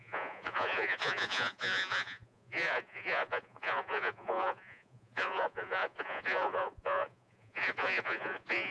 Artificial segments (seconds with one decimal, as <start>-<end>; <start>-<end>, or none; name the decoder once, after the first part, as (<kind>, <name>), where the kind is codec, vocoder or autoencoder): 0.0-8.7 (vocoder, Vocos)

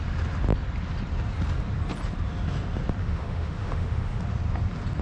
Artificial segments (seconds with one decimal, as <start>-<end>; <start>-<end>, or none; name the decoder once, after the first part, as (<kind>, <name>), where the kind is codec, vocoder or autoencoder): 3.0-4.2 (autoencoder, DAC-VAE)

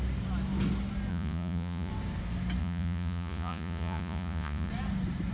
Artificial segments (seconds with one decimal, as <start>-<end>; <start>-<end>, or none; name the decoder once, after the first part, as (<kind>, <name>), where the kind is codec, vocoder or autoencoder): 1.1-1.9 (vocoder, Vocos); 2.6-4.7

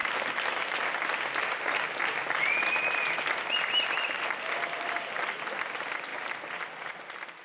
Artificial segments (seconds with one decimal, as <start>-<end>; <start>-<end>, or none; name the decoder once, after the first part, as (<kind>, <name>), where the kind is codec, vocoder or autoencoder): 0.0-0.9 (vocoder, BigVGAN v2)

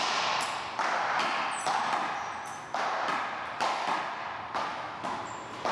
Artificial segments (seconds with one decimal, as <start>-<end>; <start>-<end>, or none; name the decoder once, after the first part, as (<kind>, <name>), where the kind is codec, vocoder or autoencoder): 4.7-5.2 (autoencoder, DAC-VAE)

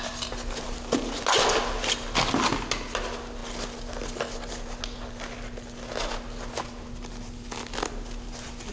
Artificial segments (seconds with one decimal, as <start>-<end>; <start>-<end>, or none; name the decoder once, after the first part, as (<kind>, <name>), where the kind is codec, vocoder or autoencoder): none

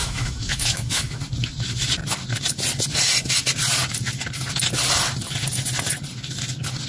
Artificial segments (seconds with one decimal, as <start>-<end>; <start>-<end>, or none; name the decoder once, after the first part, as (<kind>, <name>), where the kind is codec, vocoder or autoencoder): 0.0-1.2 (autoencoder, DAC-VAE)

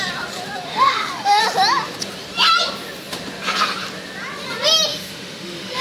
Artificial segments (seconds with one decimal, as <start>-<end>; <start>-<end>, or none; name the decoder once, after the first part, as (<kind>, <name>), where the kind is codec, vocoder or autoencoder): 0.7-1.4 (autoencoder, DAC-VAE); 4.9-5.8